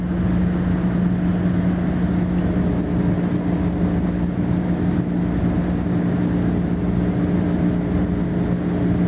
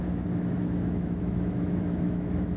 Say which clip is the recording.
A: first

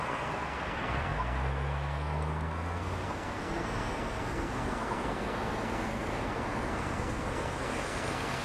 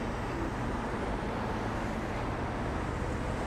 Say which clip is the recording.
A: second